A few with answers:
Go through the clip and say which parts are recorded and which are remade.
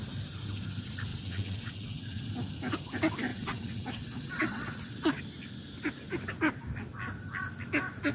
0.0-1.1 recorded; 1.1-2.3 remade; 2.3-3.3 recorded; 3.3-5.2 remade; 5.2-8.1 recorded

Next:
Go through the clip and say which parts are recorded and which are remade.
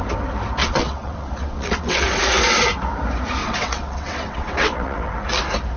0.0-0.6 recorded; 0.6-2.1 remade; 2.1-3.4 recorded; 3.4-5.1 remade; 5.1-5.8 recorded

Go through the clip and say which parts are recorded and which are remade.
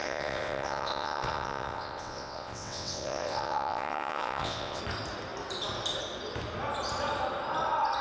0.0-4.8 remade; 4.8-8.0 recorded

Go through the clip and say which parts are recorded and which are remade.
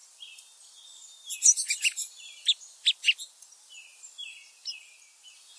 0.0-5.6 recorded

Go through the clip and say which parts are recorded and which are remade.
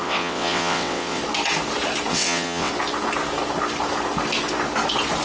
0.0-1.2 remade; 1.2-2.1 recorded; 2.1-2.7 remade; 2.7-5.2 recorded